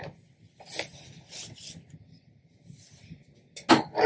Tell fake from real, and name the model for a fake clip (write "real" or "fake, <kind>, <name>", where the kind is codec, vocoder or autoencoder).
real